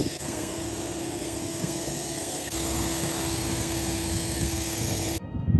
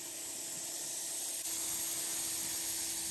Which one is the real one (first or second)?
second